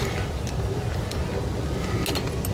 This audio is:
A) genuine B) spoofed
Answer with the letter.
A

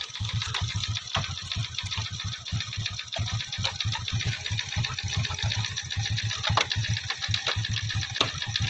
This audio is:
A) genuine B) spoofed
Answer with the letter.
B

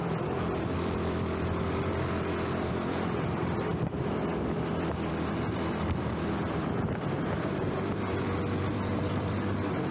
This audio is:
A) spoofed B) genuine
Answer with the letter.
A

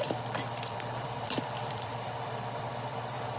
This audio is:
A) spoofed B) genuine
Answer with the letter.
A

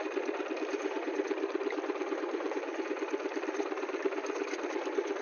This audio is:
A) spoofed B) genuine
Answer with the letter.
A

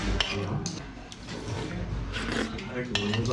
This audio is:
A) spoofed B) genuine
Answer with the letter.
B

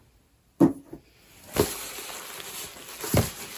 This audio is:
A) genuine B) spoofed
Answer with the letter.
A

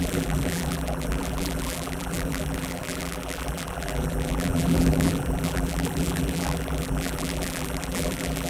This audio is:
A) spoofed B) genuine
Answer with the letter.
A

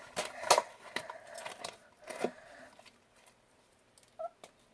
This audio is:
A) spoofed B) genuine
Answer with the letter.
B